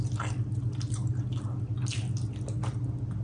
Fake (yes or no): no